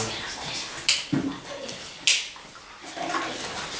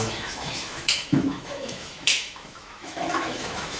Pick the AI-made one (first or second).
second